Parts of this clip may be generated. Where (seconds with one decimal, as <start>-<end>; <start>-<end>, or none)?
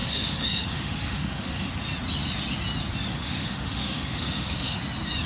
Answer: 0.0-1.7; 3.1-4.8